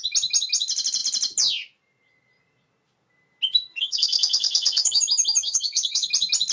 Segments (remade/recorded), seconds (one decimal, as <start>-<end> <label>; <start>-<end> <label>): 0.0-3.7 recorded; 3.7-5.0 remade; 5.0-5.4 recorded; 5.4-6.1 remade; 6.1-6.5 recorded